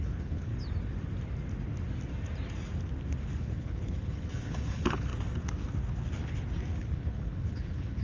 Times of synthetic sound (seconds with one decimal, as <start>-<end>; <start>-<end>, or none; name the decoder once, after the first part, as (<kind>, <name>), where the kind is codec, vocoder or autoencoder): 0.0-0.5 (codec, HILCodec); 3.4-5.1; 6.8-8.0